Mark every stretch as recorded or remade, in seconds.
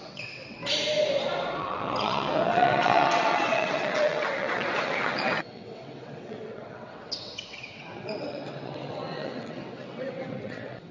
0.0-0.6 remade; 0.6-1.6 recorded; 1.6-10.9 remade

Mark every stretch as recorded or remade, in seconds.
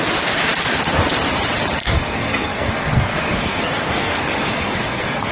0.0-1.8 recorded; 1.8-5.3 remade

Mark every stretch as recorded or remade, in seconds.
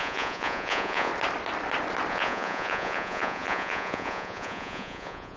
0.0-1.1 remade; 1.1-2.1 recorded; 2.1-5.4 remade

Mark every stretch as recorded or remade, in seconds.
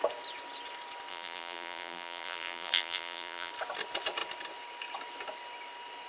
0.0-1.1 recorded; 1.1-3.5 remade; 3.5-6.1 recorded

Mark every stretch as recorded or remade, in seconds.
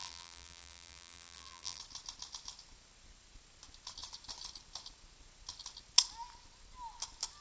0.0-1.8 remade; 1.8-7.4 recorded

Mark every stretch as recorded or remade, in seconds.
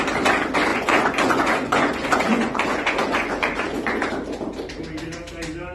0.0-0.7 recorded; 0.7-4.1 remade; 4.1-5.7 recorded